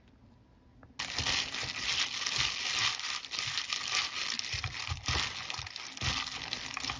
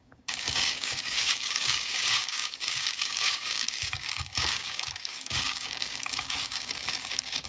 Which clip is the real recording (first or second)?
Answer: first